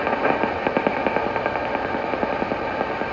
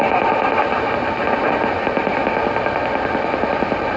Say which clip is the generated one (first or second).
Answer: second